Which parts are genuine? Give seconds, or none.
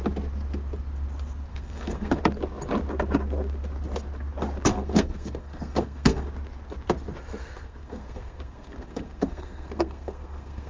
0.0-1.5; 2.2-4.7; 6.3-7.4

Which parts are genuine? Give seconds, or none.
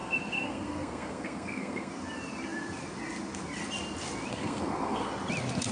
1.9-4.3; 5.1-5.7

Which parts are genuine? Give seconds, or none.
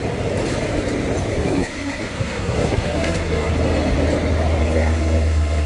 0.0-1.3; 3.5-4.6